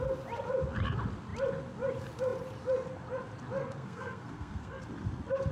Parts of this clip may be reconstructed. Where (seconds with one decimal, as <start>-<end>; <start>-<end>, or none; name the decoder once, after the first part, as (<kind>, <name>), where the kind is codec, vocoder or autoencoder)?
3.6-4.8 (codec, SNAC)